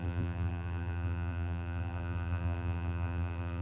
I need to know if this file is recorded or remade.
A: remade